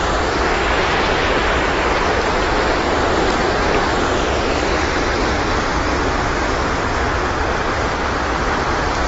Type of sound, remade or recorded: recorded